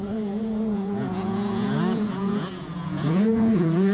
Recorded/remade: remade